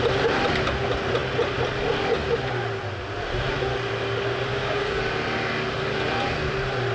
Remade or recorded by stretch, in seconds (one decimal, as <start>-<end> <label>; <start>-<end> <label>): 0.0-4.5 recorded; 4.5-5.0 remade; 5.0-6.9 recorded